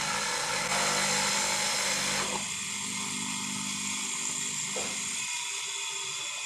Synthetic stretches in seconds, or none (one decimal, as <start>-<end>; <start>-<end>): none